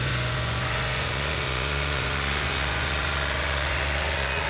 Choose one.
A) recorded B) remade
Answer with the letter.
B